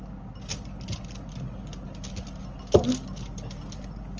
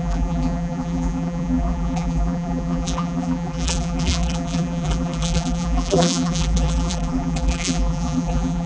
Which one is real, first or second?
first